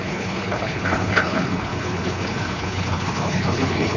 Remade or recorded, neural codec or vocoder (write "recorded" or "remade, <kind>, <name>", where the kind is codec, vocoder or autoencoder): remade, codec, HILCodec